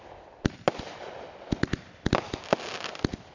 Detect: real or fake real